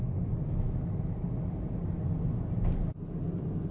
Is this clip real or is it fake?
real